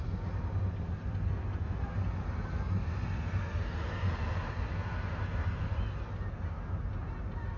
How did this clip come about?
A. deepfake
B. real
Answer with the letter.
B